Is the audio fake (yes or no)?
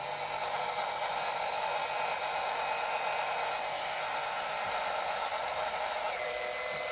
no